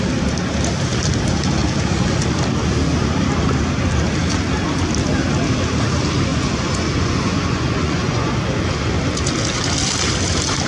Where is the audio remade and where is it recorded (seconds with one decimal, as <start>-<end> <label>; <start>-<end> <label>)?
0.0-6.3 recorded; 6.3-8.3 remade; 8.3-10.7 recorded